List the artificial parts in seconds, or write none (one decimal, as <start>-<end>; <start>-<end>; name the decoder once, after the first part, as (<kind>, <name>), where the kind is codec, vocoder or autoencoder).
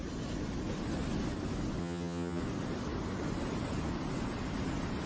1.8-2.4 (vocoder, HiFi-GAN)